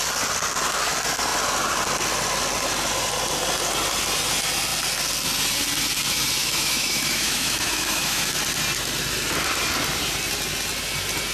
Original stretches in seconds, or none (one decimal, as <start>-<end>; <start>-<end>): 0.0-6.4; 8.3-11.3